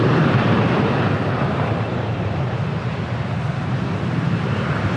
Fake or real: fake